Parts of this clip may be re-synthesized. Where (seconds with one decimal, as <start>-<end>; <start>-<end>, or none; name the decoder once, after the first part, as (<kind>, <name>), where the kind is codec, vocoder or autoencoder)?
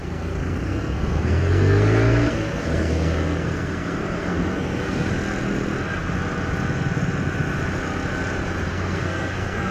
0.0-5.1 (codec, SNAC); 8.7-9.7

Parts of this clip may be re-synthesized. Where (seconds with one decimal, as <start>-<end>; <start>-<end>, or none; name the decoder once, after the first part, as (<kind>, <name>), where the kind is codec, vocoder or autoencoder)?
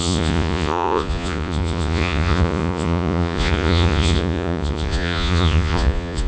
0.0-6.3 (vocoder, Vocos)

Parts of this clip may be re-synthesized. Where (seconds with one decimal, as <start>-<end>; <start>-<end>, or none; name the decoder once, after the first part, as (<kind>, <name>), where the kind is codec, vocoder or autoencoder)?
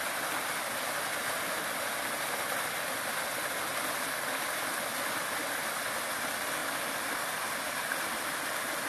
none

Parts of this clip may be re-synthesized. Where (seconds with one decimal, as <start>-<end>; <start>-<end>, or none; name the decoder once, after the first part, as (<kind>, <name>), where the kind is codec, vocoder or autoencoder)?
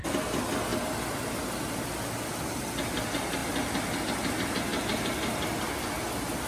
none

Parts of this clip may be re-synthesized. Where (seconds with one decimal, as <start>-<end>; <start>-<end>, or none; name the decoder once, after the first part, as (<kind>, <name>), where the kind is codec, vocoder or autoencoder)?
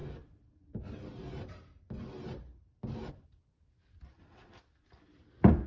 none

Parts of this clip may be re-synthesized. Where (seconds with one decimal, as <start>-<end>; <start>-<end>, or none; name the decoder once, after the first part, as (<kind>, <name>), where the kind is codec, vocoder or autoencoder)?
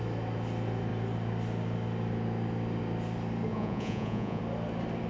3.5-4.4 (vocoder, Vocos)